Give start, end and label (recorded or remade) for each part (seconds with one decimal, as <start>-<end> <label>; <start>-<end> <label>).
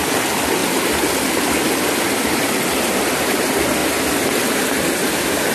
0.0-5.5 recorded